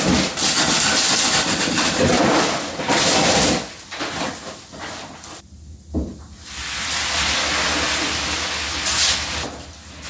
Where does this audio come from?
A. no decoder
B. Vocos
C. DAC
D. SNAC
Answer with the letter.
A